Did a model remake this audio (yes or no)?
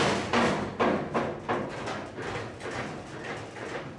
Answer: no